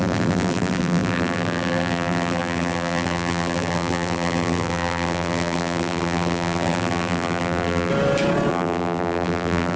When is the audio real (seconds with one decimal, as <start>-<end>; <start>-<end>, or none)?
7.9-8.5